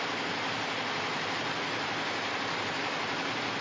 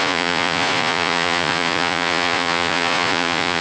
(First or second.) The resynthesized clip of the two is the second